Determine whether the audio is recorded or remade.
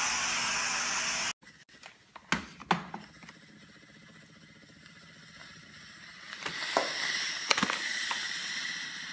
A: recorded